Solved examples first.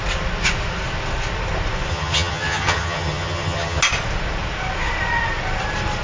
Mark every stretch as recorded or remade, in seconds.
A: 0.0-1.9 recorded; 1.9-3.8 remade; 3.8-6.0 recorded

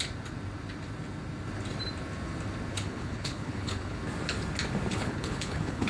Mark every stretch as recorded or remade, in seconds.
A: 0.0-2.7 recorded; 2.7-4.0 remade; 4.0-4.9 recorded; 4.9-5.9 remade

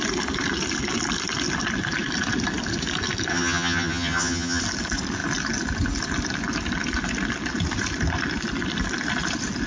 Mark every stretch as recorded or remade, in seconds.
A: 0.0-3.3 recorded; 3.3-4.6 remade; 4.6-9.7 recorded

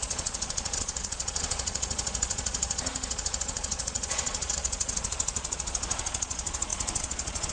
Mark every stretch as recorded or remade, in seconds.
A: 0.0-7.5 remade

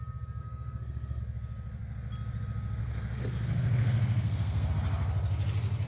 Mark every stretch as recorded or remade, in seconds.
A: 0.0-0.4 recorded; 0.4-1.2 remade; 1.2-2.8 recorded; 2.8-4.7 remade; 4.7-5.9 recorded

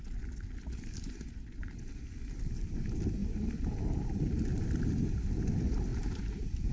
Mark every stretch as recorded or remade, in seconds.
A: 0.0-5.9 recorded; 5.9-6.7 remade

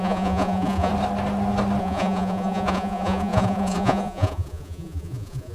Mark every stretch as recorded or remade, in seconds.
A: 0.0-0.9 remade; 0.9-1.8 recorded; 1.8-5.5 remade